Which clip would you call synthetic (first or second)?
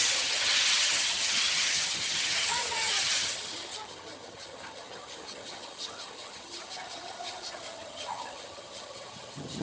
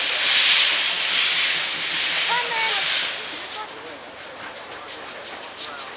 first